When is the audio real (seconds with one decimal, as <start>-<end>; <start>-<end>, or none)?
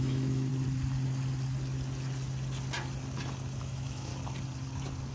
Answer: 0.5-3.6; 4.1-5.1